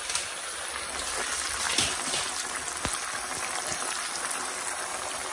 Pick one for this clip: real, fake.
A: real